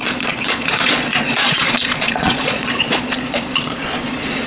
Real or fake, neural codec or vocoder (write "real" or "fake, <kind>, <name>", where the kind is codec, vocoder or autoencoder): fake, vocoder, Vocos